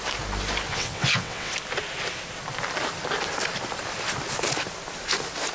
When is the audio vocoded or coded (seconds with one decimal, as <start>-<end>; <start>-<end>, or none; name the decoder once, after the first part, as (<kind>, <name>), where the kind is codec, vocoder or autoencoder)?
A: 0.7-1.5 (vocoder, WaveNeXt)